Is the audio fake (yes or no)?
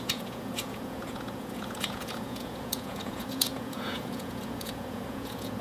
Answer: yes